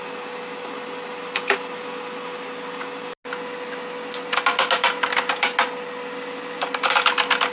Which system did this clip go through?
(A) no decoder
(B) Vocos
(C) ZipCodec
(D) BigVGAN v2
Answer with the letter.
A